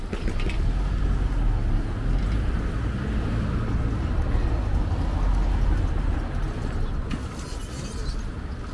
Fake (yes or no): no